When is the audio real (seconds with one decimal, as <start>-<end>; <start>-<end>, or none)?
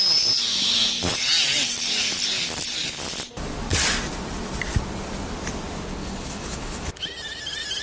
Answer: 0.0-0.5; 1.0-6.0; 6.9-7.8